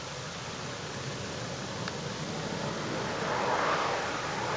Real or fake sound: real